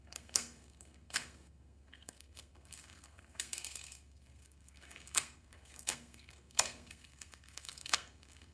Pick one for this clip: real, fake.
fake